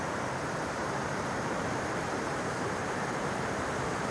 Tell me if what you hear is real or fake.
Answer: fake